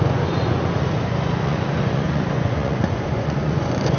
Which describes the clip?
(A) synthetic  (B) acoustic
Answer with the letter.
A